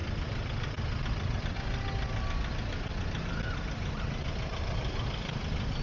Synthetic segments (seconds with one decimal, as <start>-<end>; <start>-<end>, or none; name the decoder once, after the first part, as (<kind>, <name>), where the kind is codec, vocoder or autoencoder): none